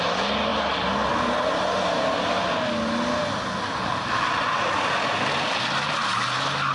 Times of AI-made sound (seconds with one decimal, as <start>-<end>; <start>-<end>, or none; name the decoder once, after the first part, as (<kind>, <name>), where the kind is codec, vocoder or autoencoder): none